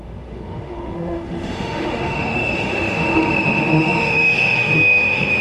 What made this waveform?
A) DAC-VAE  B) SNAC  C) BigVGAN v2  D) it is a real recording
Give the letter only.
A